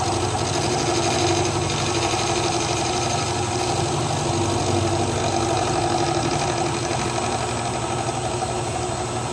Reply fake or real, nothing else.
real